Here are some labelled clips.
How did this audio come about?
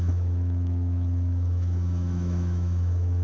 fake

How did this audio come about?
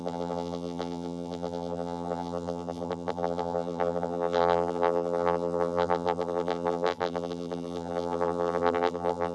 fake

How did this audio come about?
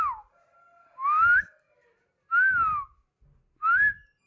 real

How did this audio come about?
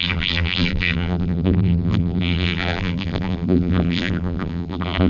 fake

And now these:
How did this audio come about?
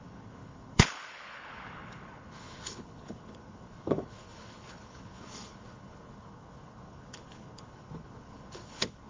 fake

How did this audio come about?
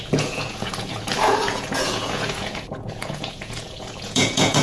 fake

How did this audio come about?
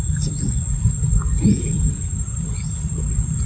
real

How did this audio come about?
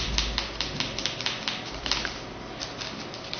real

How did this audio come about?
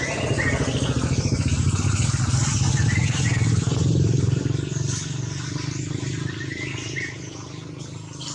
real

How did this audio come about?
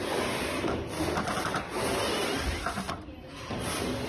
real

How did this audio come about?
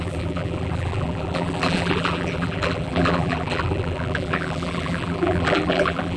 fake